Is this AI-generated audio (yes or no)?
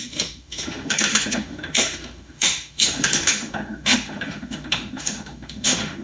yes